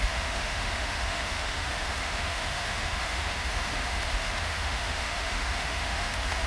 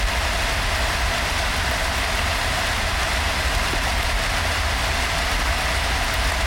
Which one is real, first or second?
second